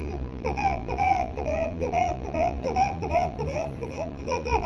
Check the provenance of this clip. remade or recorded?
remade